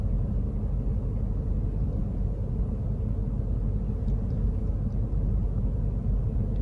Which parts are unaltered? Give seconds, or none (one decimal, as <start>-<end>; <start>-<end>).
0.0-6.6